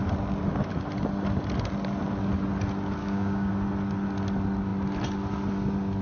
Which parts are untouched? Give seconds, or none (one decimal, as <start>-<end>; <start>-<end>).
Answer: 0.0-3.0; 3.5-6.0